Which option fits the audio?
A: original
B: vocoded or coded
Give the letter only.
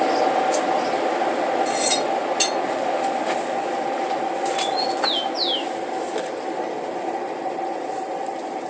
A